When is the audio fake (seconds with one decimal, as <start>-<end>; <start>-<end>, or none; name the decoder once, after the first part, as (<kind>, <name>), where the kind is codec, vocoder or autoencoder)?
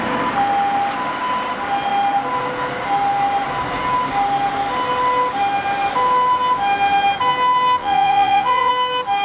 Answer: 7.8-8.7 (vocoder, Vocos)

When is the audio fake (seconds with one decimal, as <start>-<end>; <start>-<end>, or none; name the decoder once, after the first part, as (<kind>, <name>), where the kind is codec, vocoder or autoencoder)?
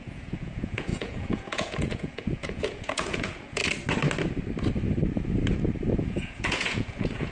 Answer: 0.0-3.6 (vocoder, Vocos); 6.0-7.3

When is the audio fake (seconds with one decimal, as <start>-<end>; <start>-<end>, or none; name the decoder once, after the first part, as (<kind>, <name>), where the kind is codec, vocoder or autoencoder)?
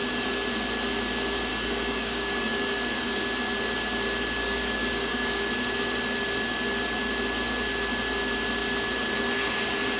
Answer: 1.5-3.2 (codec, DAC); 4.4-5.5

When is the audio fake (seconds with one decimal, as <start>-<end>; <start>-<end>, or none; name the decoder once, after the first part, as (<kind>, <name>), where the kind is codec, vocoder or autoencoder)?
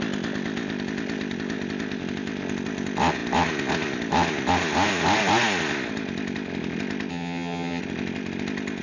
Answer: 7.1-7.8 (vocoder, HiFi-GAN)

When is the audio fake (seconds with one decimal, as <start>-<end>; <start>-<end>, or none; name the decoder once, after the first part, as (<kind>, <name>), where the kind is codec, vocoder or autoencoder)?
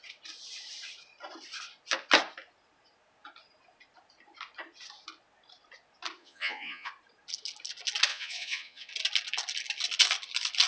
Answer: 6.2-6.9 (vocoder, Vocos); 8.1-8.9